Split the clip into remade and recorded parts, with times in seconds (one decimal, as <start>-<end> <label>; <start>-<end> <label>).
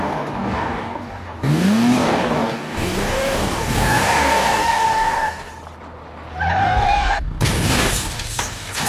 0.0-5.5 remade; 5.5-6.5 recorded; 6.5-8.9 remade